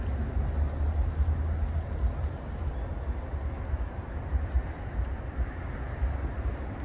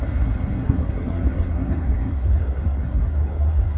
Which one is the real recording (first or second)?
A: first